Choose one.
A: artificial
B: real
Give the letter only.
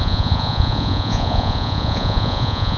A